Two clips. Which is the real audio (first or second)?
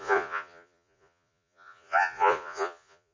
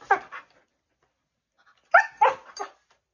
second